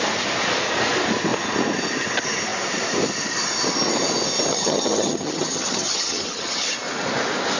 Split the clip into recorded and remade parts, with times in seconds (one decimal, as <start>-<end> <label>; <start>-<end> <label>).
0.0-4.5 recorded; 4.5-6.7 remade; 6.7-7.6 recorded